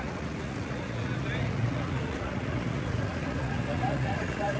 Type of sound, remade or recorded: remade